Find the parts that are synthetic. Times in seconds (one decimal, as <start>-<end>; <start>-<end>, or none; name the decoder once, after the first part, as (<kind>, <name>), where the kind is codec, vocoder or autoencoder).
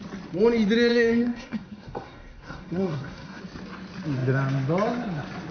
0.9-3.4 (codec, SNAC)